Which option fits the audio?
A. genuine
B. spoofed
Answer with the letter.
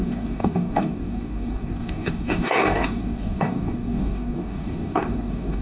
B